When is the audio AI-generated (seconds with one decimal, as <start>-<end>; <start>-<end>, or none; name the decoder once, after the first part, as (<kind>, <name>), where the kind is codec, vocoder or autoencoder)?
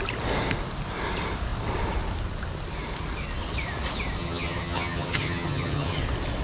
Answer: 4.2-6.0 (vocoder, HiFi-GAN)